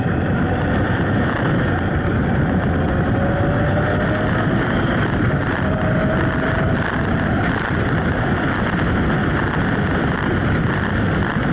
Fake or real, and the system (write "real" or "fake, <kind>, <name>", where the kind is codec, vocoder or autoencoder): real